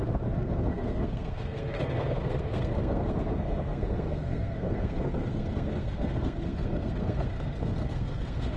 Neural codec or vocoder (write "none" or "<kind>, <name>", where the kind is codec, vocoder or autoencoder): codec, SNAC